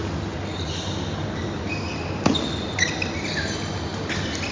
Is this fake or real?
real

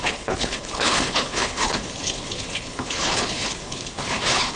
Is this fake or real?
fake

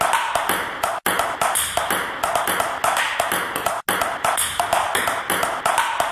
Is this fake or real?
real